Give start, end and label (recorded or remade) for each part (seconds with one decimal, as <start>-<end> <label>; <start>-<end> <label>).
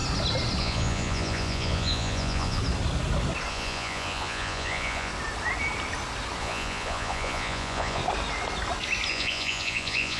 0.0-0.6 recorded; 0.6-2.6 remade; 2.6-3.5 recorded; 3.5-5.1 remade; 5.1-6.4 recorded; 6.4-8.0 remade; 8.0-9.1 recorded; 9.1-10.2 remade